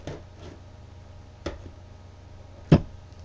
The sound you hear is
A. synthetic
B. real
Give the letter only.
B